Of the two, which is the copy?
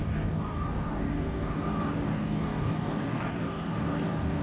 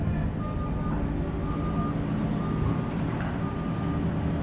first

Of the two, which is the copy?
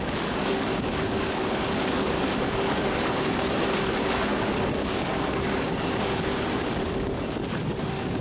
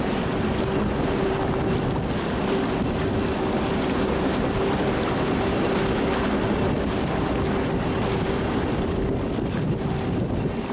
first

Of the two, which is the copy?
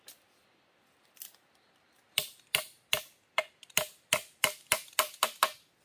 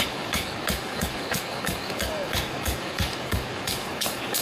second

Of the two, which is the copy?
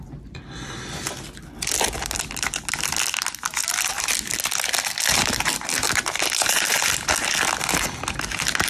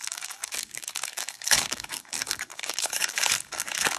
second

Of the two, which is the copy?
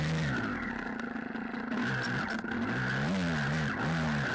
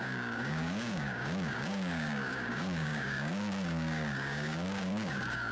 second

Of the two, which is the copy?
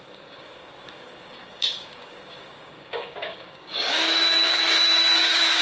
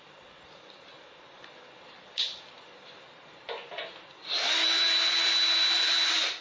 first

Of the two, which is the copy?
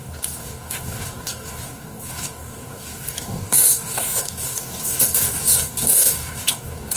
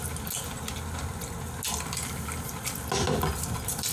first